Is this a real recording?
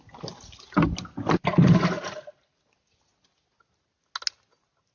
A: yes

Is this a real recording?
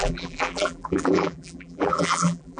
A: no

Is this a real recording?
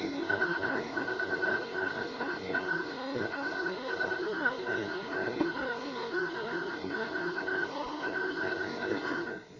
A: no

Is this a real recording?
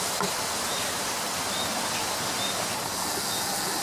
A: yes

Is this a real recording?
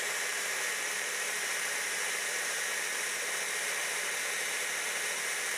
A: no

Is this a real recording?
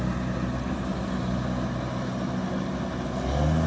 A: yes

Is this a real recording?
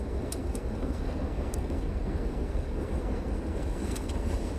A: no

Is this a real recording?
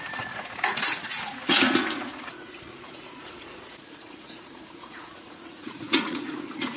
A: no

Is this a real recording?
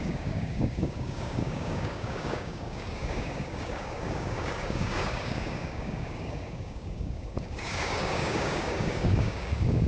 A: no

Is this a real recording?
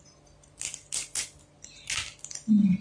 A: yes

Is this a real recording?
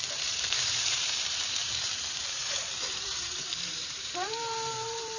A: no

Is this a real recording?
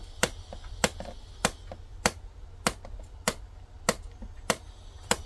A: yes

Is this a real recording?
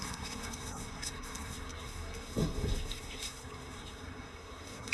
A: no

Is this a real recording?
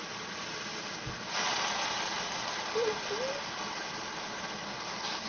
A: yes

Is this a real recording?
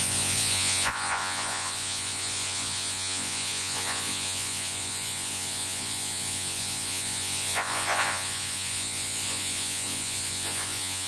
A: no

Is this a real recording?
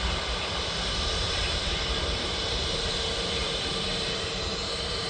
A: no